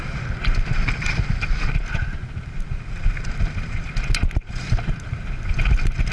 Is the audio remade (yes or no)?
no